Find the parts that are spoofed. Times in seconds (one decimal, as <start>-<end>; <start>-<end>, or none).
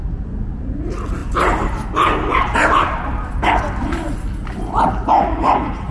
none